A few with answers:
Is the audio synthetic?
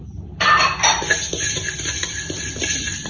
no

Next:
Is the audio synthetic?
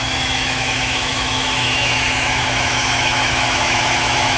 yes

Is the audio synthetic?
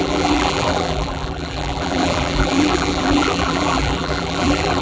yes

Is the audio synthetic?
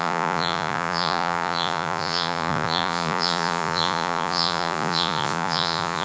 yes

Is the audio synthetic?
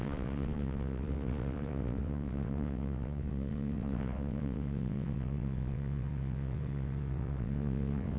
yes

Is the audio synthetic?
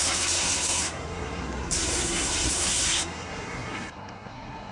yes